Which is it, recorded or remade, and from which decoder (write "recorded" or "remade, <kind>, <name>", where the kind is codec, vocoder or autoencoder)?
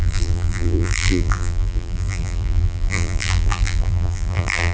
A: remade, vocoder, BigVGAN v2